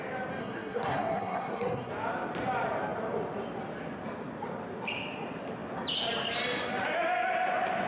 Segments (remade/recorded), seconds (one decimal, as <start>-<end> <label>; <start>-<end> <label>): 0.0-0.4 recorded; 0.4-1.9 remade; 1.9-7.9 recorded